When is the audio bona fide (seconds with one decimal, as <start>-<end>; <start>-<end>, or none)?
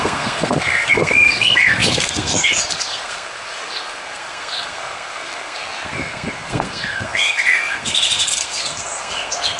none